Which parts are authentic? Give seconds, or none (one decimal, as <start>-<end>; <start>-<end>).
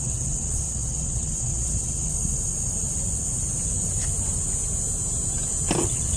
2.1-5.8